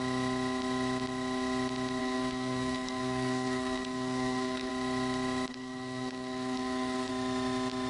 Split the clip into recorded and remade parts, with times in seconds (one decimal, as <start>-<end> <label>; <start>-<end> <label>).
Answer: 0.0-2.0 recorded; 2.0-4.7 remade; 4.7-5.5 recorded; 5.5-7.1 remade; 7.1-7.9 recorded